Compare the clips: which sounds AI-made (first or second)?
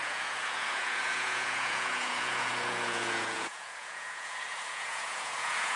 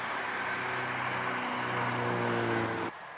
first